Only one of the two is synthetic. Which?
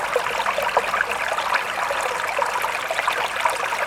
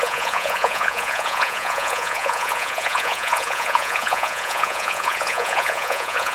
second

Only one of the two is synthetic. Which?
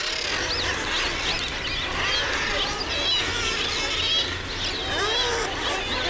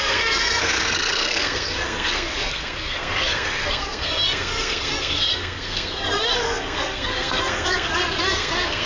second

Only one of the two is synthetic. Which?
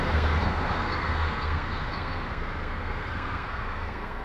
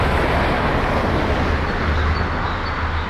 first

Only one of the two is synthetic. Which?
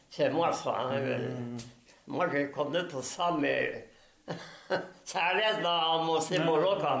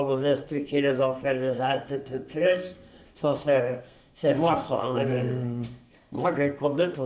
second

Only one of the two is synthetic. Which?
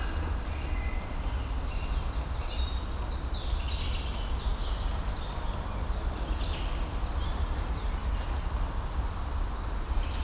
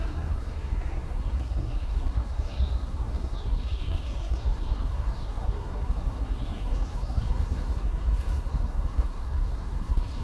second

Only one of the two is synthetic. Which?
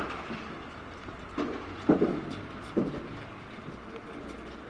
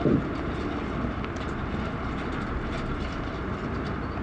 second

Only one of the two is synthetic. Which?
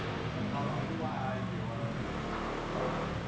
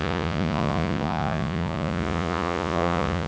second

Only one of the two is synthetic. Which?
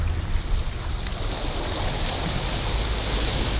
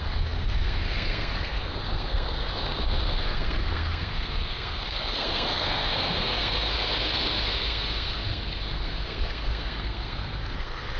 second